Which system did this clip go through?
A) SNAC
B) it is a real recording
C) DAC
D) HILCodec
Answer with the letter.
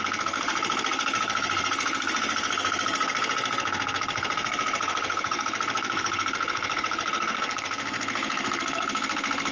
A